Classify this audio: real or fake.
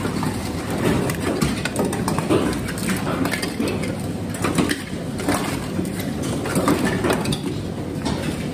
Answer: real